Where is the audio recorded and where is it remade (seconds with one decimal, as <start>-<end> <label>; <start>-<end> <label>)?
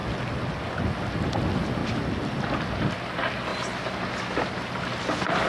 0.0-5.5 recorded